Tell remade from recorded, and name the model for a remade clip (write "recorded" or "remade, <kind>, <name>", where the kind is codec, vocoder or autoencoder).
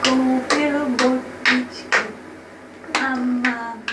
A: recorded